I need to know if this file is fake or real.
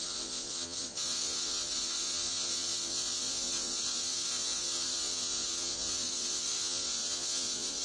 fake